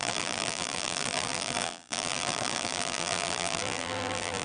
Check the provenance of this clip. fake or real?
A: fake